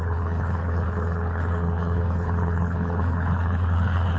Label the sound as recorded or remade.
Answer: remade